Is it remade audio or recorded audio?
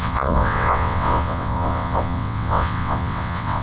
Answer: remade